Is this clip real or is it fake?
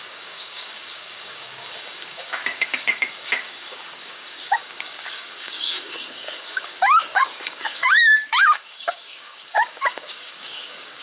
fake